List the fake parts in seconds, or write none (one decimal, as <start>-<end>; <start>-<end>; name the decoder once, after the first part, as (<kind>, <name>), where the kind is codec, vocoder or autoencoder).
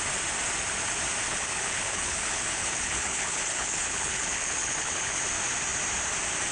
1.3-5.2 (codec, HILCodec)